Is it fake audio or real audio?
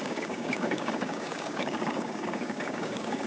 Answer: fake